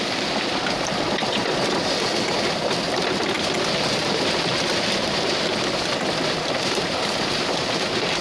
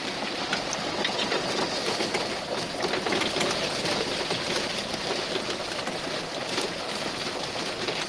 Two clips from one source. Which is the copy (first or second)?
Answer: first